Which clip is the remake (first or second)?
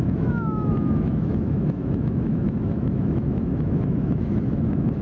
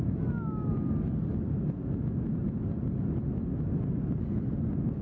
first